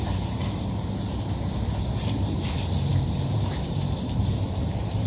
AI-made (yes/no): yes